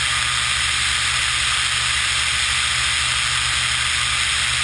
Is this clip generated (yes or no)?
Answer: no